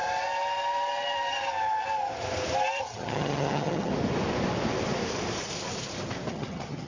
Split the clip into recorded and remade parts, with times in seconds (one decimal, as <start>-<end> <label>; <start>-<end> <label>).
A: 0.0-2.8 recorded; 2.8-3.9 remade; 3.9-6.3 recorded; 6.3-6.9 remade